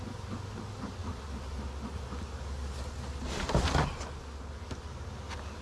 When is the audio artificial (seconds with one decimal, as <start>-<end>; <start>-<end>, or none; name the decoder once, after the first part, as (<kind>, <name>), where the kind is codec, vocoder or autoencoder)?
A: none